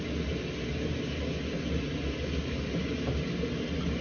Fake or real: real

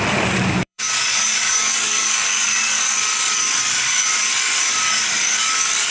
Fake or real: fake